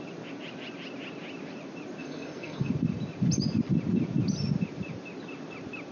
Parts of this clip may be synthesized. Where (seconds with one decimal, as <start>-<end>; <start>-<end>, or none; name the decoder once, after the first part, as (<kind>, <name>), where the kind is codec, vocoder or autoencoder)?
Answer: 2.0-2.7 (codec, SNAC)